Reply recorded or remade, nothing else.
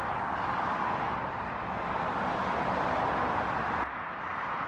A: recorded